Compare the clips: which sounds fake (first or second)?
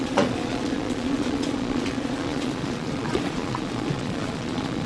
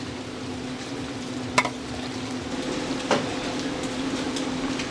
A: first